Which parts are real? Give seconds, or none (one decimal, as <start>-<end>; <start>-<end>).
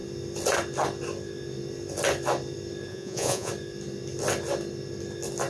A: 0.0-2.9; 3.5-5.5